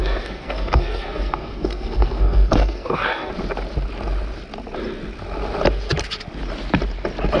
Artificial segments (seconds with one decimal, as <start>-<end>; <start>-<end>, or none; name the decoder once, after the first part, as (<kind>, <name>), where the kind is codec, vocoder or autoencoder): 0.0-3.3 (codec, SNAC)

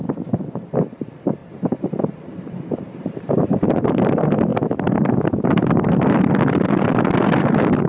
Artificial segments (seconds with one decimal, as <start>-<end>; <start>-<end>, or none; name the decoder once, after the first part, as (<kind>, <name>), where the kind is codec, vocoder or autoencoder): 1.4-4.0 (vocoder, BigVGAN v2); 4.5-5.9

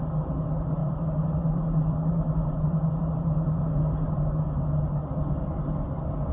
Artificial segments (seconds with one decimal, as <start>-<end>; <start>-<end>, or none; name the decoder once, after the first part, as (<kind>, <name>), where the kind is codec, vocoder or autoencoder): 0.8-4.6 (vocoder, BigVGAN v2)

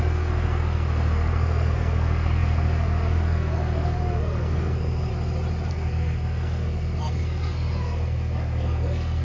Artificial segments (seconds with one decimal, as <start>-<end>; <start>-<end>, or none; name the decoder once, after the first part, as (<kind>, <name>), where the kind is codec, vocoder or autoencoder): 0.0-5.1 (codec, SNAC); 5.7-9.2

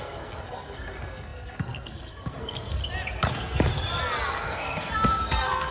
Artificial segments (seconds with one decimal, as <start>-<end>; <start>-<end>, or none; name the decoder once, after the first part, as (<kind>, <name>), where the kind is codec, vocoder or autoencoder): 0.0-2.8 (codec, SNAC); 3.3-3.7; 4.3-5.7